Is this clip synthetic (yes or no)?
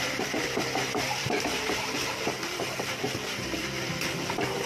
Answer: yes